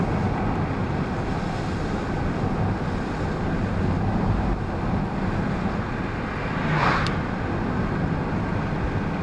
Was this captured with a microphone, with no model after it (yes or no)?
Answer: yes